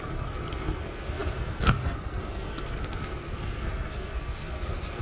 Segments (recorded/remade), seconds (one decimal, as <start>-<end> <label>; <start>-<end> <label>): 0.0-5.0 remade